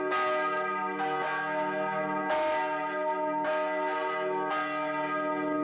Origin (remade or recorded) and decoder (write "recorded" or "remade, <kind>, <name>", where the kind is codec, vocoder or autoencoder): recorded